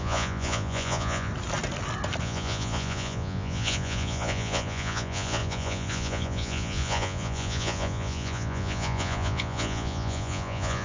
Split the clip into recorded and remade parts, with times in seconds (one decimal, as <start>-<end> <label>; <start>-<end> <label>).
0.0-1.3 remade; 1.3-2.2 recorded; 2.2-10.8 remade